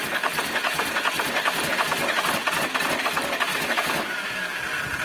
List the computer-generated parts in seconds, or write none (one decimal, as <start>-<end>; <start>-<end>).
3.5-4.6